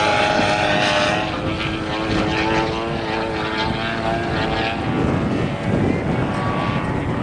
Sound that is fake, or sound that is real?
real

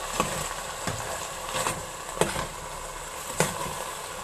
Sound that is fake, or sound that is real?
real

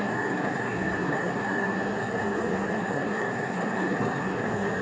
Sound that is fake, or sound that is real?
fake